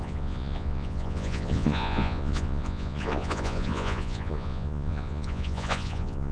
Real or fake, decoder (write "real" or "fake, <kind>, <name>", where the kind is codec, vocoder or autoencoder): fake, vocoder, Vocos